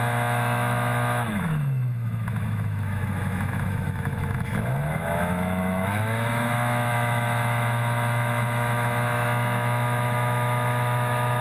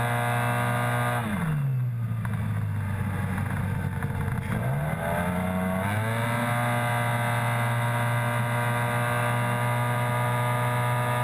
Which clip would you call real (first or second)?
second